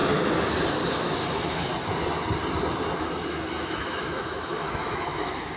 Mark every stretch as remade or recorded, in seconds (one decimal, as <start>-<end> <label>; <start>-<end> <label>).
0.0-0.9 recorded; 0.9-1.7 remade; 1.7-3.0 recorded; 3.0-5.6 remade